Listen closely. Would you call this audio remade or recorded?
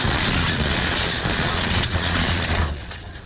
remade